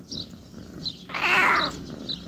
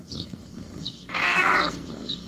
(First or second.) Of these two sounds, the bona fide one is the first